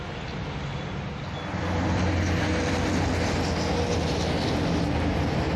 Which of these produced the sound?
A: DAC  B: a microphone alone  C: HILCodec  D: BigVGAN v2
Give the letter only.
B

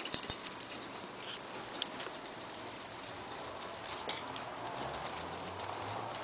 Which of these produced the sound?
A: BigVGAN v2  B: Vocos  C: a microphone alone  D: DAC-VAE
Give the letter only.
C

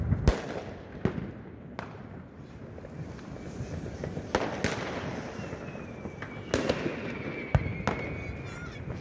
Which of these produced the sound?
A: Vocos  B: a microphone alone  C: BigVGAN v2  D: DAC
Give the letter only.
B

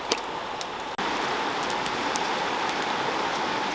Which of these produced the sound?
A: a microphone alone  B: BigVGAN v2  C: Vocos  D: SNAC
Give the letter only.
A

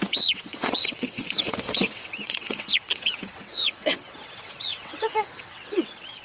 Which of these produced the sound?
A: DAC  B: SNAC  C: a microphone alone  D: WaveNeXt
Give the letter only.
D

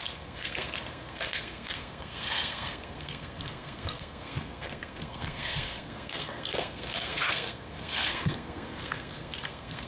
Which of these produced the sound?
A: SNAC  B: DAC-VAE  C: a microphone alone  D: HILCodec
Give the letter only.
A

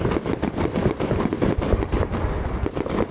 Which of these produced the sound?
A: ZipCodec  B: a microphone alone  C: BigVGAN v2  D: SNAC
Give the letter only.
B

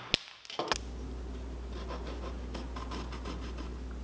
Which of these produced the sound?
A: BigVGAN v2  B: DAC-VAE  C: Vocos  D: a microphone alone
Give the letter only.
D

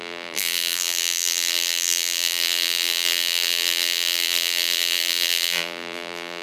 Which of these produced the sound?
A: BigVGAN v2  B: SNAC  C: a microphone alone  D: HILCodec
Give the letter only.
A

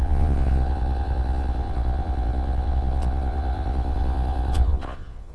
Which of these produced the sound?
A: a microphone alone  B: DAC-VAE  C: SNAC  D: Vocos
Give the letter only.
D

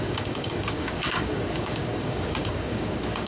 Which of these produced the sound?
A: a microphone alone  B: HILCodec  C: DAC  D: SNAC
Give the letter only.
C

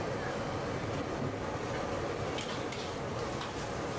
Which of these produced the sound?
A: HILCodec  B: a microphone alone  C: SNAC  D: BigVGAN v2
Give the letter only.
B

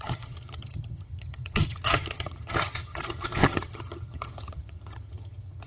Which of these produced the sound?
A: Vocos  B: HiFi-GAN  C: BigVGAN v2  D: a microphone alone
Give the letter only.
B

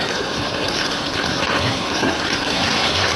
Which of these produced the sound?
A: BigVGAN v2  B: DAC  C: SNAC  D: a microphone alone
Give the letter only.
C